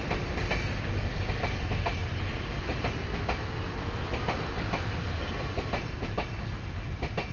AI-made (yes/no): no